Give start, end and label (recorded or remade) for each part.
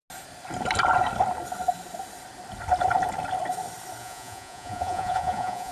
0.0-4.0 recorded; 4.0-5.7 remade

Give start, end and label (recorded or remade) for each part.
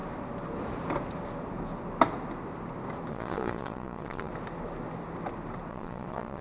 0.0-3.1 recorded; 3.1-4.3 remade; 4.3-5.7 recorded; 5.7-6.4 remade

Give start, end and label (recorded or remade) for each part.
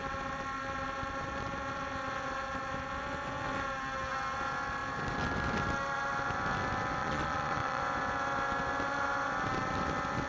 0.0-7.0 recorded; 7.0-7.8 remade; 7.8-10.3 recorded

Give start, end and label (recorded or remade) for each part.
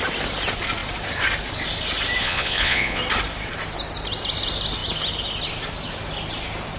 0.0-2.2 recorded; 2.2-3.0 remade; 3.0-6.8 recorded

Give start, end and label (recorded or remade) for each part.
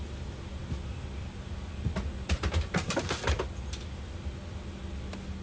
0.0-5.4 recorded